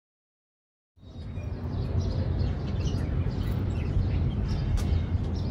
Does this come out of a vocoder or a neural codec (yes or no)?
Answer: no